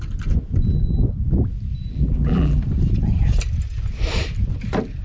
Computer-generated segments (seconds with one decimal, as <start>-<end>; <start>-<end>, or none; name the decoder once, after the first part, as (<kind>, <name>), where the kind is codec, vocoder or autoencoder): 1.9-2.6 (vocoder, BigVGAN v2)

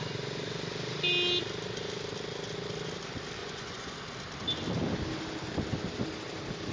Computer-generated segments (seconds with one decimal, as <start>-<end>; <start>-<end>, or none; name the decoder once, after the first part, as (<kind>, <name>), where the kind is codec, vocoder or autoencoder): 3.4-4.0 (vocoder, Vocos)